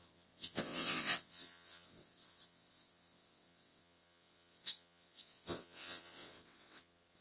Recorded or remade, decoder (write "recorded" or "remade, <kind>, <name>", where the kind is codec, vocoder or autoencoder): remade, vocoder, WaveNeXt